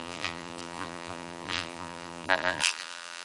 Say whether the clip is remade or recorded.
remade